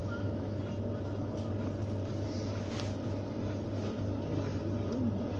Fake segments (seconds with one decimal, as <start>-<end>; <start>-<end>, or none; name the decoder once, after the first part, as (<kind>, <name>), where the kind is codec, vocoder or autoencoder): 0.0-0.6 (autoencoder, DAC-VAE)